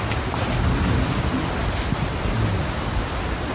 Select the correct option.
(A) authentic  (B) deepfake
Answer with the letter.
A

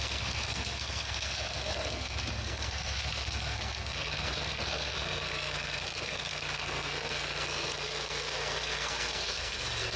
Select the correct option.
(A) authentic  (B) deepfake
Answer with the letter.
B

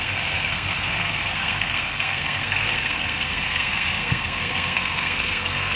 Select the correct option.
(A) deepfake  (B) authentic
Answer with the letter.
A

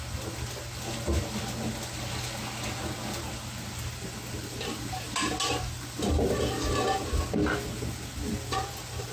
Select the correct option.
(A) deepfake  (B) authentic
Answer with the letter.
B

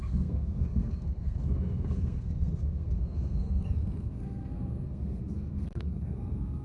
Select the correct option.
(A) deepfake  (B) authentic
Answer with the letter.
A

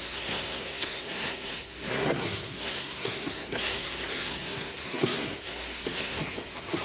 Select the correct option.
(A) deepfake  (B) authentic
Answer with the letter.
A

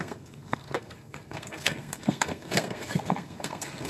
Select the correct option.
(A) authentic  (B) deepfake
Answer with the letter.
B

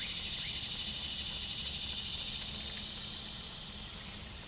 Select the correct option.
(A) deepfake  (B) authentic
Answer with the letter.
B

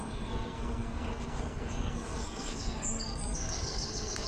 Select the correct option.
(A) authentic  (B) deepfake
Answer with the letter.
B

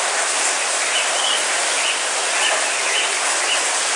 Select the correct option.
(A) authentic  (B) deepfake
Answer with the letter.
A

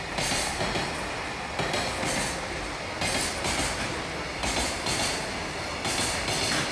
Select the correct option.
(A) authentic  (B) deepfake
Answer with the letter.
A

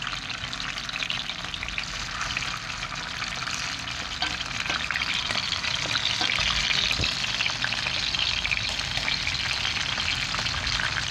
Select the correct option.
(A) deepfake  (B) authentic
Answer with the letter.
B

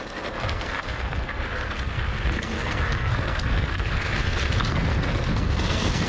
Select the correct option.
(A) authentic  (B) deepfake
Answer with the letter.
B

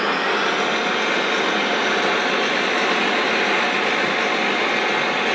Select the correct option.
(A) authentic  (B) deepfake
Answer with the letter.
A